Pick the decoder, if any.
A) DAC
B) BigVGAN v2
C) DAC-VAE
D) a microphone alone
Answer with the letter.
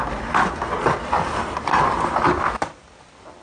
D